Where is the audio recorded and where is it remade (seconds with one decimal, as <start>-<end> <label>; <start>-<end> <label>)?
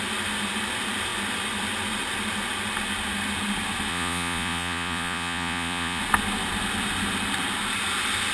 0.0-3.9 recorded; 3.9-6.0 remade; 6.0-8.3 recorded